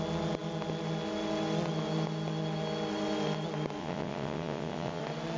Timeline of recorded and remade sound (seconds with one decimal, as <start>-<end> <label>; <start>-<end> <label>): 0.0-3.8 recorded; 3.8-5.0 remade; 5.0-5.4 recorded